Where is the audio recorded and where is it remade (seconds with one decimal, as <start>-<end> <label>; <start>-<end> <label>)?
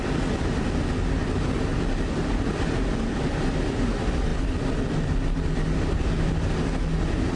0.0-7.4 recorded